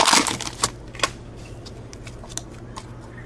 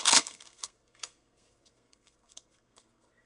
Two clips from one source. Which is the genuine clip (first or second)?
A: first